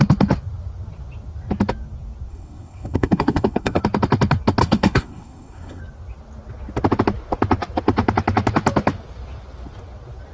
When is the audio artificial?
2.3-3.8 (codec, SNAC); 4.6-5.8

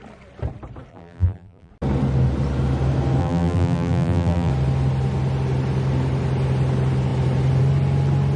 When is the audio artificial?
0.9-1.7 (vocoder, BigVGAN v2); 3.2-4.5